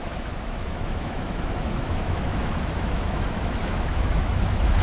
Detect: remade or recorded remade